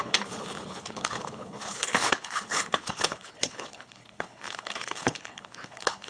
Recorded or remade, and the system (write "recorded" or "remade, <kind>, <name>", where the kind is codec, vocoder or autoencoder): remade, codec, HILCodec